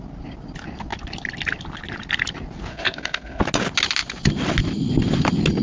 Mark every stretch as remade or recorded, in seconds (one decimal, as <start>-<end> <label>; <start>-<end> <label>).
0.0-2.7 recorded; 2.7-3.4 remade; 3.4-5.6 recorded